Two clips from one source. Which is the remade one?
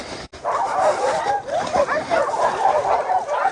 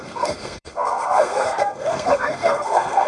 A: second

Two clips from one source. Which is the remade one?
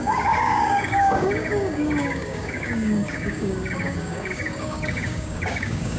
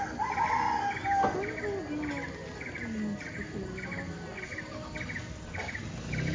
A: first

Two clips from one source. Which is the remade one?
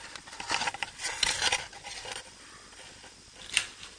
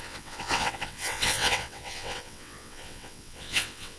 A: second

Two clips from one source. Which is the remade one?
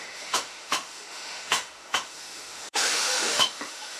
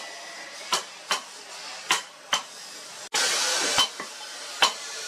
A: first